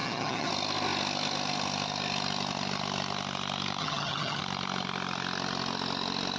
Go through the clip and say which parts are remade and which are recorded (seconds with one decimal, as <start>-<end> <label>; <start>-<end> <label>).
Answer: 0.0-0.5 remade; 0.5-3.8 recorded; 3.8-4.4 remade; 4.4-6.4 recorded